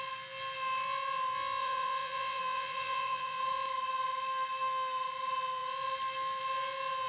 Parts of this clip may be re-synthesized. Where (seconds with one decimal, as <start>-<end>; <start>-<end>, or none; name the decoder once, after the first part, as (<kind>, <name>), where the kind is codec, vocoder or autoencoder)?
1.6-3.4 (vocoder, WaveNeXt)